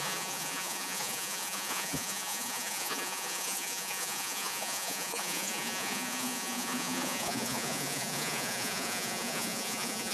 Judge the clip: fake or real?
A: fake